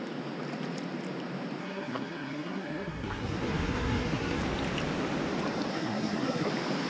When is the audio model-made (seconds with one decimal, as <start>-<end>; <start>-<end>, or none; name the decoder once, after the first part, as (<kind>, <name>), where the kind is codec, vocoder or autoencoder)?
1.6-4.4 (codec, SNAC); 5.7-6.5